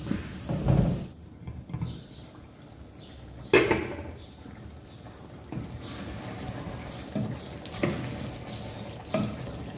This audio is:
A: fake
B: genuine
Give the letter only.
B